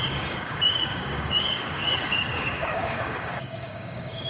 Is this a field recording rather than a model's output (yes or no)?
no